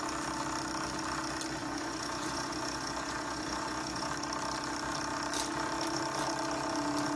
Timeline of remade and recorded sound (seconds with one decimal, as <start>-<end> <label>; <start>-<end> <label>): 0.0-1.6 recorded; 1.6-4.1 remade; 4.1-7.2 recorded